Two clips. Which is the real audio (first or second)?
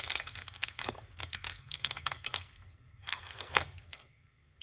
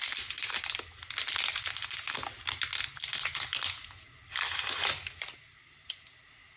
second